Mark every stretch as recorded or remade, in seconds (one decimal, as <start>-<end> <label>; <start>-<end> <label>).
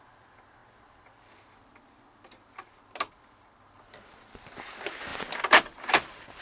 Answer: 0.0-6.4 recorded